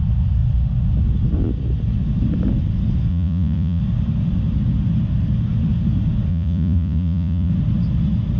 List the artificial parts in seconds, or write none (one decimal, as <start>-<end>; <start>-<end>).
3.1-3.8; 6.3-7.5